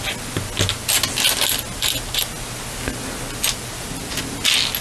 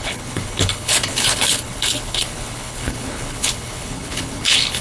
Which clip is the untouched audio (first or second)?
first